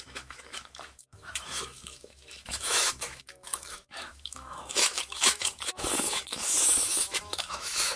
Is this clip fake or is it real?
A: fake